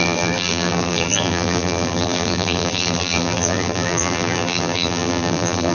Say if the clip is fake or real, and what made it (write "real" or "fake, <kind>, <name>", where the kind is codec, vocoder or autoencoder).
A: fake, vocoder, BigVGAN v2